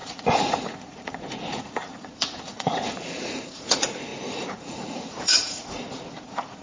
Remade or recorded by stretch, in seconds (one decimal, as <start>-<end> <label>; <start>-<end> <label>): 0.0-6.6 remade